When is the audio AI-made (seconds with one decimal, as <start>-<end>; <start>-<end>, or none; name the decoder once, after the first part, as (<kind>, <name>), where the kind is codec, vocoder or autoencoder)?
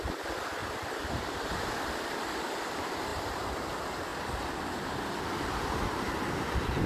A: 0.6-1.7 (vocoder, BigVGAN v2); 3.1-3.6